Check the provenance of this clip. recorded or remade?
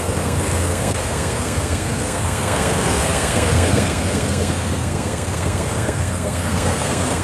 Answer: remade